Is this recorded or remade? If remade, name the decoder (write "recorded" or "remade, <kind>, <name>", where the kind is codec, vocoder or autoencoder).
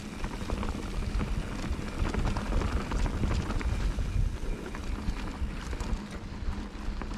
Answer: recorded